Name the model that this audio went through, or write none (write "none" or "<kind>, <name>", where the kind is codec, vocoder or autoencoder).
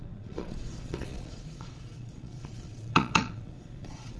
vocoder, Vocos